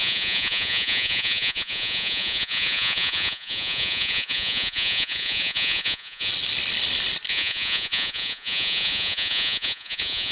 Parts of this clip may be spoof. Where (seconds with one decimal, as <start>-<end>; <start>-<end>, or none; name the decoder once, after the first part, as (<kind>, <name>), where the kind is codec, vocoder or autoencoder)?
0.0-6.3 (vocoder, Vocos); 7.3-10.3